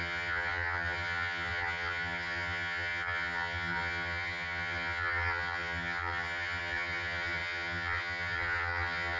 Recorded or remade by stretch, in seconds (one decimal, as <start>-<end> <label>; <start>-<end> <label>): 0.0-9.2 remade

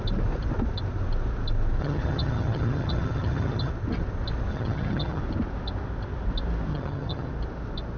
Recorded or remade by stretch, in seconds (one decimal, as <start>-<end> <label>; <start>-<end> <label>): 0.0-1.8 recorded; 1.8-3.7 remade; 3.7-4.5 recorded; 4.5-5.2 remade; 5.2-6.7 recorded; 6.7-7.3 remade; 7.3-8.0 recorded